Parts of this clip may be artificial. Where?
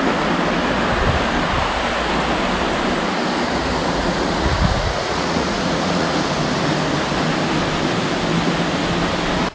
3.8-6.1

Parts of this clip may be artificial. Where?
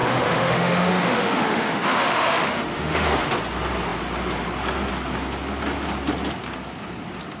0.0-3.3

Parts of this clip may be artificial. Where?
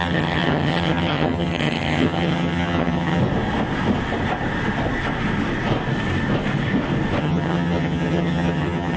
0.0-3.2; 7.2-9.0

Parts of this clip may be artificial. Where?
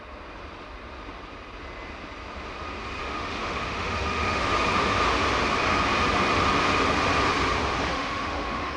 3.0-4.4; 7.9-8.8